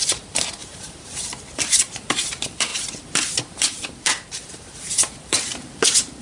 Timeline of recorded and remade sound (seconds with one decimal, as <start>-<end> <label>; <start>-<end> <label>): 0.0-2.7 remade; 2.7-3.4 recorded; 3.4-6.2 remade

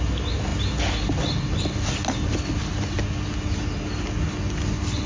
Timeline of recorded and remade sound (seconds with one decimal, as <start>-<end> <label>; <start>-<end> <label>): 0.0-5.1 recorded

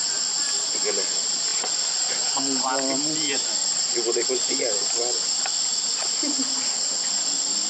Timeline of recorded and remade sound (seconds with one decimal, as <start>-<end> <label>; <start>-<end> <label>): 0.0-1.5 recorded; 1.5-4.3 remade; 4.3-7.7 recorded

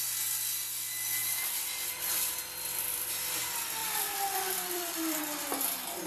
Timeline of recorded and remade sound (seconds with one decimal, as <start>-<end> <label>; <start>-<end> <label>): 0.0-1.2 recorded; 1.2-3.1 remade; 3.1-3.8 recorded; 3.8-5.2 remade; 5.2-6.1 recorded

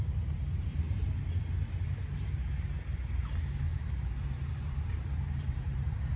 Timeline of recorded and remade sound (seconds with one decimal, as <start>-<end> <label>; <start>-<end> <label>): 0.0-0.7 remade; 0.7-4.4 recorded; 4.4-6.2 remade

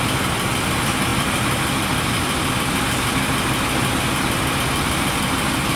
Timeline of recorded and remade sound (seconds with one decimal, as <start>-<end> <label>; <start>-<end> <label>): 0.0-5.8 recorded

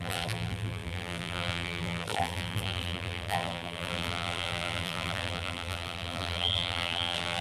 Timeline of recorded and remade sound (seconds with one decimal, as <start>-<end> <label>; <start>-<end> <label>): 0.0-7.4 remade